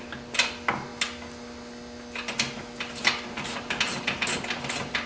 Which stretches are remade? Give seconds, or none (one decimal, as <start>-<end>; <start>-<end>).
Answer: none